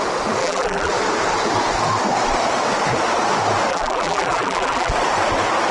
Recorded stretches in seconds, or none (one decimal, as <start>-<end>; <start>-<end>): 0.0-0.4; 0.9-3.7; 4.9-5.7